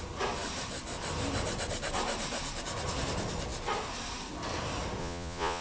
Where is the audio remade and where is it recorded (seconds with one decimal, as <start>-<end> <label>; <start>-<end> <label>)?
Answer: 0.0-5.0 recorded; 5.0-5.6 remade